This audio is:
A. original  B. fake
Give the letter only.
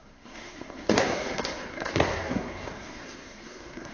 B